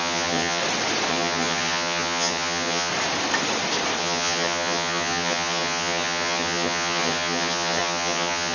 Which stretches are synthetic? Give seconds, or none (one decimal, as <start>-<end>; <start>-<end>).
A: 0.0-0.6; 1.1-2.9; 4.0-8.5